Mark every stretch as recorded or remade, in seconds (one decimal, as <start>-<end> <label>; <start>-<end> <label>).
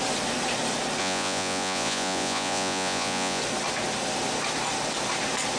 0.0-1.0 recorded; 1.0-3.4 remade; 3.4-5.6 recorded